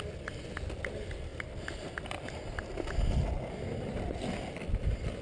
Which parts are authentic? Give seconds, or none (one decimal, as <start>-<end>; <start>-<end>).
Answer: 0.0-5.2